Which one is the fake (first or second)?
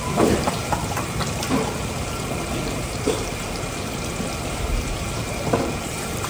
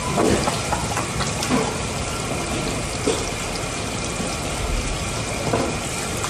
first